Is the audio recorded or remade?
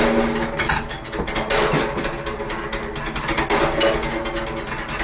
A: recorded